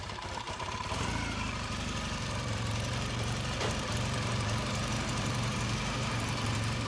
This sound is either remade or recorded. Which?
remade